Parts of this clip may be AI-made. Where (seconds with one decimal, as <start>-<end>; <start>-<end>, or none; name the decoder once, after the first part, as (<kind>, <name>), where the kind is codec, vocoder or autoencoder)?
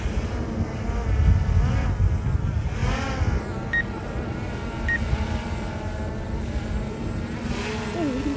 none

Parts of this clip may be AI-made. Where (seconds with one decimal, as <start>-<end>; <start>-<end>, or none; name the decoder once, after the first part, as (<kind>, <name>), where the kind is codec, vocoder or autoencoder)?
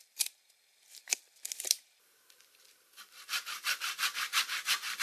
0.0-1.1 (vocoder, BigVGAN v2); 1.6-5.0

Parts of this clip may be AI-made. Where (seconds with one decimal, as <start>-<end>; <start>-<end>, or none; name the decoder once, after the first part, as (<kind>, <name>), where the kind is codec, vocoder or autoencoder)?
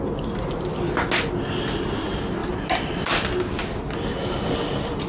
none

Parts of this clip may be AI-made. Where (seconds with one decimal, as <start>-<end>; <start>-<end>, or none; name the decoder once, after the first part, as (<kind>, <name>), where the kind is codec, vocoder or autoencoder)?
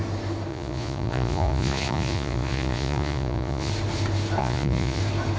0.5-3.7 (vocoder, Vocos); 4.4-5.0